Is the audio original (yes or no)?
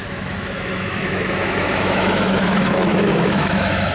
no